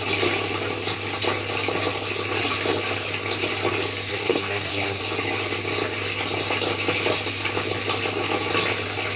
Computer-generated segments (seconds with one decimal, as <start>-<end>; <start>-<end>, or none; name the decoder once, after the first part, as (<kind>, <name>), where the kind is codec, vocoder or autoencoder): 4.1-5.0 (codec, SNAC)